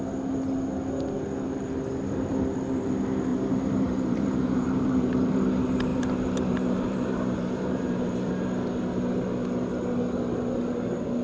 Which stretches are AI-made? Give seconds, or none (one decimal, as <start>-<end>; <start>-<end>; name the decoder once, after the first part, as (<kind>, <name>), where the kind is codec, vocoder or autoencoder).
3.3-5.3 (vocoder, BigVGAN v2); 5.9-8.3